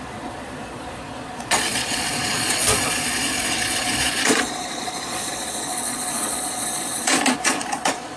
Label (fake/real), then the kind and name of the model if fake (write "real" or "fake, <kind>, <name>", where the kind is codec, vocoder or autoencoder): fake, vocoder, Vocos